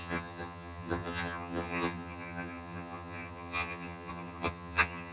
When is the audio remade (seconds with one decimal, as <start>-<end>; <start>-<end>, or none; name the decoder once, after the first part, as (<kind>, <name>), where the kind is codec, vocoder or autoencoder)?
0.0-5.1 (vocoder, HiFi-GAN)